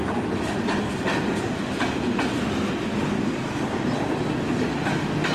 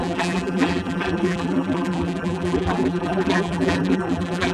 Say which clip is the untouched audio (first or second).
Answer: first